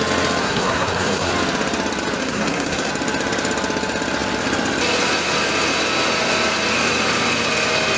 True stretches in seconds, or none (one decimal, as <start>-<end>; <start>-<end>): 0.0-0.4; 1.3-2.2; 2.9-8.0